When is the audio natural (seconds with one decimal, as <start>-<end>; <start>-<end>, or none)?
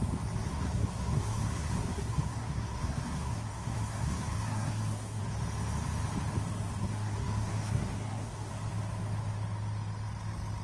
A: 0.0-0.5; 5.2-6.8; 8.5-10.6